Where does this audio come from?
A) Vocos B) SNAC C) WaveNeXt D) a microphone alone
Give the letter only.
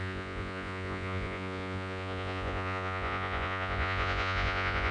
A